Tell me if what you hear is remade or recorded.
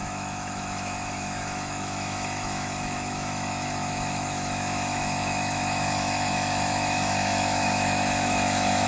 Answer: remade